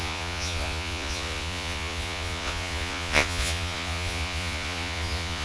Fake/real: fake